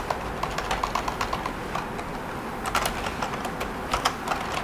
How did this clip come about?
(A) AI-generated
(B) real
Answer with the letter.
B